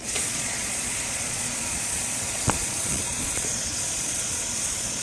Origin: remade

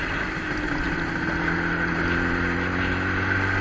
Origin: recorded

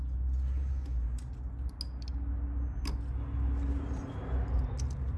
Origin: recorded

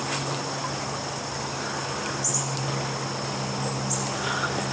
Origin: recorded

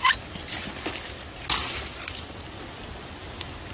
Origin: recorded